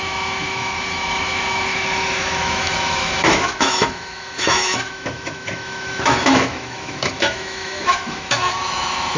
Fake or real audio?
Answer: fake